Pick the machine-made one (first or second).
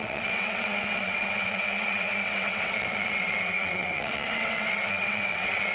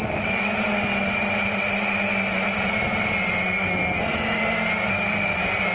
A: first